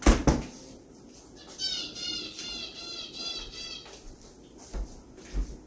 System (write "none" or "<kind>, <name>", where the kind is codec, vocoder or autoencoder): none